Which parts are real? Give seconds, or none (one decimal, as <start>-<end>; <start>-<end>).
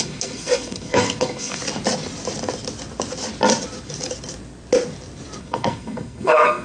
1.6-5.4